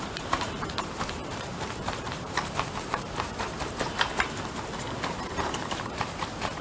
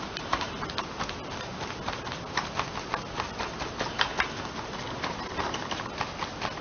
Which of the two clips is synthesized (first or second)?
first